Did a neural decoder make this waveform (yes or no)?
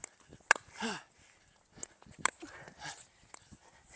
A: no